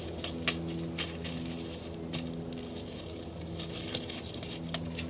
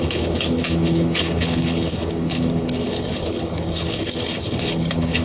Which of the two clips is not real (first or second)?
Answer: second